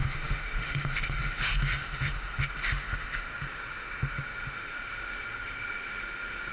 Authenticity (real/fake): fake